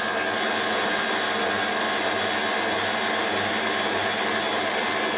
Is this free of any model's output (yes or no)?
yes